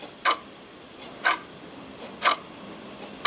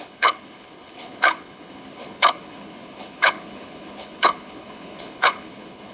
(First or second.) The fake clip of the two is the second